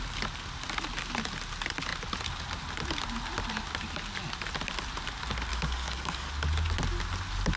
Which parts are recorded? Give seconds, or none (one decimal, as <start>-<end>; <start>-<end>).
0.0-5.5; 6.3-7.6